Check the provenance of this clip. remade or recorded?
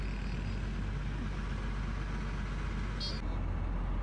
recorded